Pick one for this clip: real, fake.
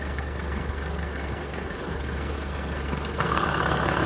fake